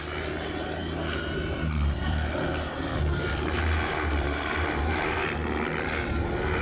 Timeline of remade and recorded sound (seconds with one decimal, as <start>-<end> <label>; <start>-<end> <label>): 0.0-0.8 recorded; 0.8-4.8 remade; 4.8-6.6 recorded